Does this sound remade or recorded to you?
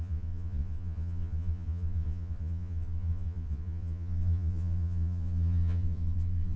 remade